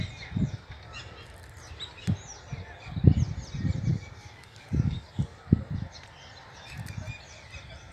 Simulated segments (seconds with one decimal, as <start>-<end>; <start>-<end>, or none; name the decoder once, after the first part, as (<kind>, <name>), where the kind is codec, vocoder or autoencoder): 3.9-5.4 (codec, DAC)